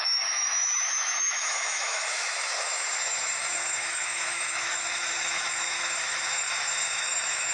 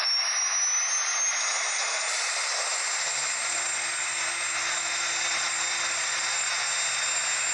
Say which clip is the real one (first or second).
second